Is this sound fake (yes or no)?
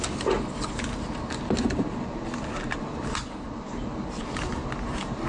no